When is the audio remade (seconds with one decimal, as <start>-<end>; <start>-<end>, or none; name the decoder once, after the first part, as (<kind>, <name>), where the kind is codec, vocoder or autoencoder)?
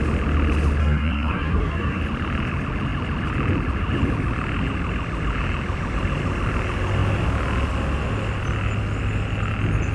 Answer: 0.8-2.0 (codec, SNAC)